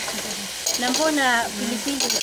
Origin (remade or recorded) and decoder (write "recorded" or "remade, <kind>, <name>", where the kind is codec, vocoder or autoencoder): recorded